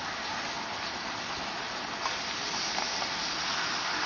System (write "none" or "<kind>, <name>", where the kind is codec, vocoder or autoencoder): none